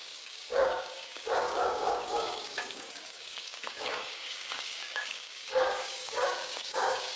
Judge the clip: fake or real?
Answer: fake